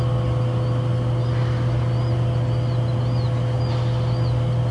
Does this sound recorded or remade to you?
recorded